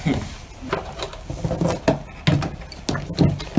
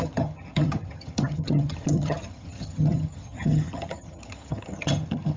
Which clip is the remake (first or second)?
second